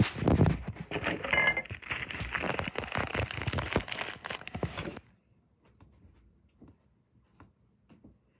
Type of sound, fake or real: real